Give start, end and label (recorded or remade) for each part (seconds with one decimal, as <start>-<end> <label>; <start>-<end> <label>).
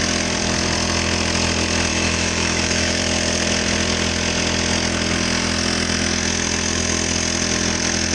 0.0-1.9 recorded; 1.9-3.0 remade; 3.0-8.1 recorded